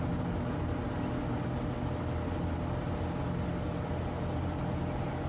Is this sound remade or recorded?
recorded